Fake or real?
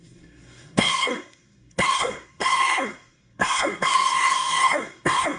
fake